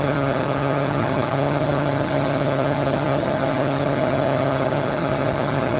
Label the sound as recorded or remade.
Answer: remade